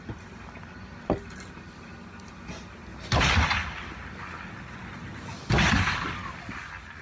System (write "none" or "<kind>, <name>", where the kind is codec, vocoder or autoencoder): none